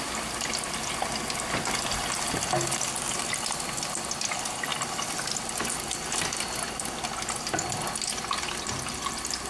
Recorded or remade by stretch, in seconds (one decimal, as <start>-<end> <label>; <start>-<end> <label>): 0.0-9.5 recorded